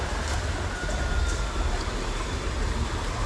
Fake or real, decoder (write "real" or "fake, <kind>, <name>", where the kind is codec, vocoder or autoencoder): real